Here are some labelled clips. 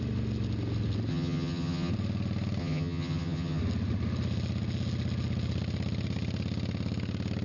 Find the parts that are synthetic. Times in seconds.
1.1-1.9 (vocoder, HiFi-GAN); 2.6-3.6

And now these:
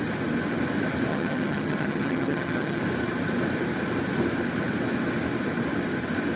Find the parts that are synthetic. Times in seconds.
1.1-2.8 (vocoder, HiFi-GAN)

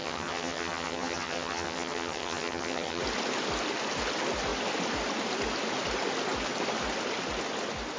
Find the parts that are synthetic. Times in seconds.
0.0-3.0 (vocoder, HiFi-GAN)